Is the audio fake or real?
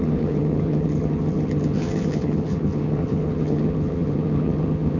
fake